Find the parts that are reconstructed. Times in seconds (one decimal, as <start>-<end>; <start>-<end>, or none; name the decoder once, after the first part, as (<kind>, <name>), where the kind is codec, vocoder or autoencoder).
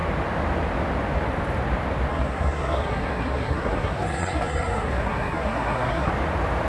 2.1-6.1 (codec, SNAC)